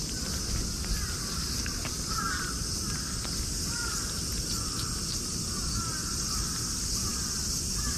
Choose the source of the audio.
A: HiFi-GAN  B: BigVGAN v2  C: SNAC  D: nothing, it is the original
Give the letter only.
D